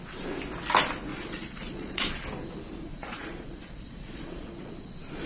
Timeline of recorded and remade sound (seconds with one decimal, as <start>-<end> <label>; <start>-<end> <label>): 0.0-1.1 recorded; 1.1-2.1 remade; 2.1-2.9 recorded; 2.9-4.7 remade; 4.7-5.3 recorded